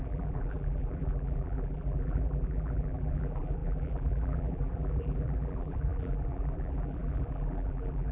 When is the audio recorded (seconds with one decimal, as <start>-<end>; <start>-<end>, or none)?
none